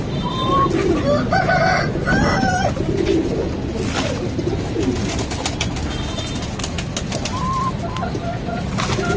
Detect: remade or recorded recorded